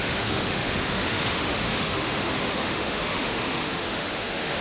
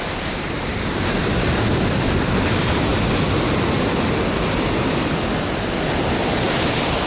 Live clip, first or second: second